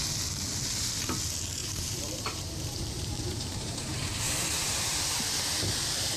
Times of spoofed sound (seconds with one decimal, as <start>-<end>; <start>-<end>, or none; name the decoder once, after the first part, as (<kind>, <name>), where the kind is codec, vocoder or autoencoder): 1.6-5.3 (vocoder, BigVGAN v2)